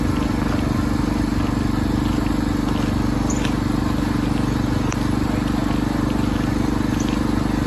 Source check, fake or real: real